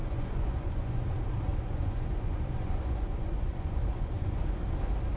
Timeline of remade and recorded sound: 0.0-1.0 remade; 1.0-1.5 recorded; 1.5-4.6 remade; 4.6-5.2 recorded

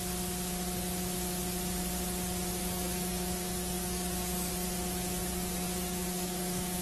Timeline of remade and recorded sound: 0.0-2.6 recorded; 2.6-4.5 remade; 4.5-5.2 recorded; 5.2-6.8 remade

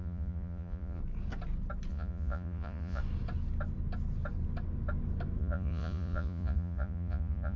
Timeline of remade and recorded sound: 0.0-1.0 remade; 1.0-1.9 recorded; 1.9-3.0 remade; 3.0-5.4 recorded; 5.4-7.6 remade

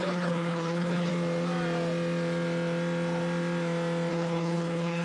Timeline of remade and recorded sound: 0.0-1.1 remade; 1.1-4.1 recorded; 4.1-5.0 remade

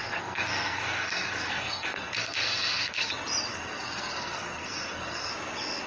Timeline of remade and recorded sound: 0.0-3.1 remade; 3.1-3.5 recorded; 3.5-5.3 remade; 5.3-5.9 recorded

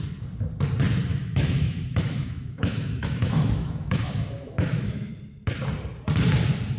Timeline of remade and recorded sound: 0.0-1.1 recorded; 1.1-5.1 remade; 5.1-6.8 recorded

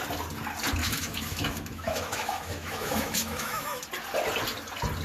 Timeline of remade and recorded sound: 0.0-0.8 recorded; 0.8-3.8 remade; 3.8-5.0 recorded

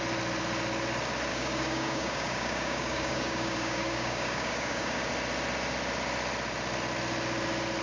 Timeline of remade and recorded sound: 0.0-1.3 recorded; 1.3-5.1 remade; 5.1-7.8 recorded